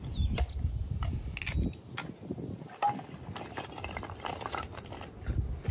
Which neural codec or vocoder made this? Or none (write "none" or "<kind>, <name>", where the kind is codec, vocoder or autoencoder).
none